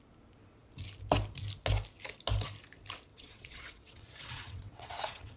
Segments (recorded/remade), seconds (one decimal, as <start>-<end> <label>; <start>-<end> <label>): 0.0-3.1 recorded; 3.1-5.4 remade